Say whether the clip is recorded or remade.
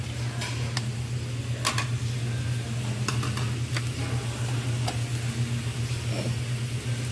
recorded